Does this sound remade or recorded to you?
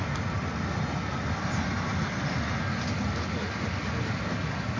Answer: recorded